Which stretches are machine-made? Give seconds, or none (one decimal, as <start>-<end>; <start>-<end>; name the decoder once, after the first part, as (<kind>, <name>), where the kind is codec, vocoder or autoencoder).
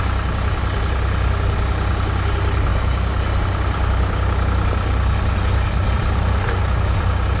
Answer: none